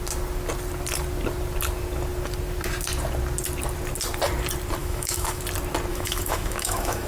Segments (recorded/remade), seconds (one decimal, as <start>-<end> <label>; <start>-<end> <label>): 0.0-4.8 recorded; 4.8-5.4 remade; 5.4-5.9 recorded; 5.9-7.1 remade